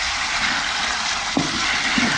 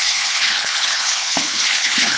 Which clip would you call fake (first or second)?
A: second